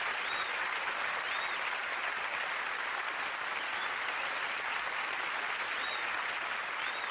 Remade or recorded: recorded